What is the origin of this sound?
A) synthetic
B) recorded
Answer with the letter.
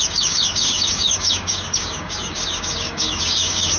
A